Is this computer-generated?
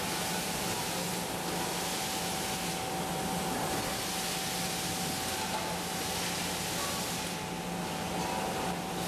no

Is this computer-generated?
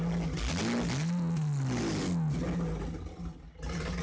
no